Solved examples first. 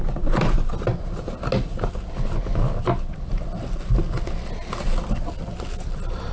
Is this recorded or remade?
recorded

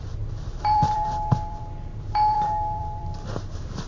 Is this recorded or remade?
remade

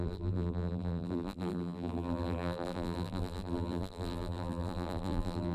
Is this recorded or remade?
remade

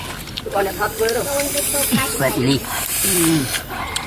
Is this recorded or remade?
remade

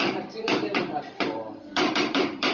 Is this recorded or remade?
remade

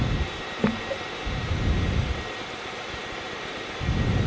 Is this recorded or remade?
remade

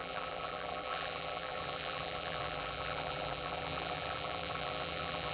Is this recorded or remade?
remade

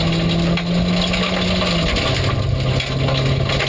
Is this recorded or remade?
recorded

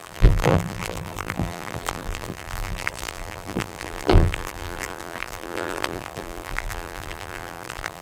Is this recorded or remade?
remade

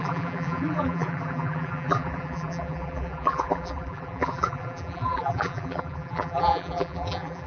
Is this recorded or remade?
remade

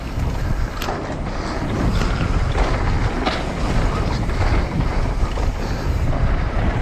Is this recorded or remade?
recorded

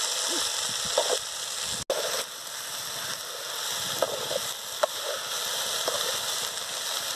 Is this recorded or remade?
recorded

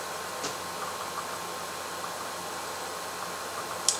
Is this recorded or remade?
recorded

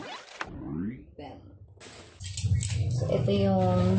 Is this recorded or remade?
recorded